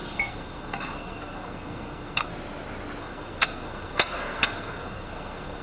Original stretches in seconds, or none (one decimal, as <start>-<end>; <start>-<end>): 2.3-3.0